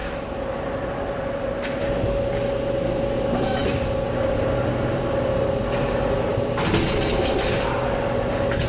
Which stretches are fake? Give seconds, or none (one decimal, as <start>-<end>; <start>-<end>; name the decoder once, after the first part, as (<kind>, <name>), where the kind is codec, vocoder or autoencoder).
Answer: none